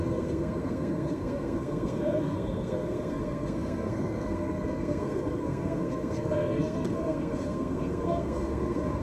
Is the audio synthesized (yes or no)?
yes